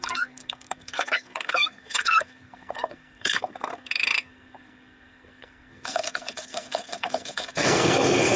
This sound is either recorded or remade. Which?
remade